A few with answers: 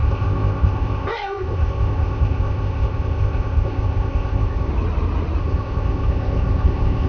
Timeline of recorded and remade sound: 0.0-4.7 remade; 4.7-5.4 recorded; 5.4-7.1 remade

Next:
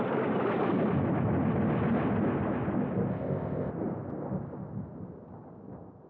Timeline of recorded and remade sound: 0.0-3.1 recorded; 3.1-3.7 remade; 3.7-6.1 recorded

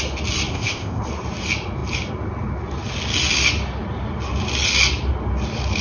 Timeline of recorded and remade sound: 0.0-0.5 recorded; 0.5-1.0 remade; 1.0-5.8 recorded

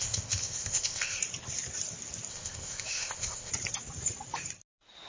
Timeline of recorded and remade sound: 0.0-1.2 remade; 1.2-2.3 recorded; 2.3-3.5 remade; 3.5-5.1 recorded

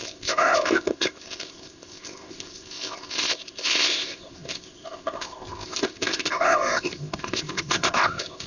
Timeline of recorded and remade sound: 0.0-8.5 remade

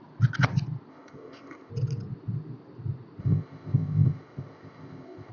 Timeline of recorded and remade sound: 0.0-0.9 recorded; 0.9-1.7 remade; 1.7-3.2 recorded; 3.2-5.3 remade

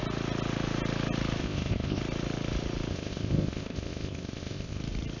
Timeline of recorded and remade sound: 0.0-1.4 recorded; 1.4-2.0 remade; 2.0-2.9 recorded; 2.9-4.8 remade; 4.8-5.2 recorded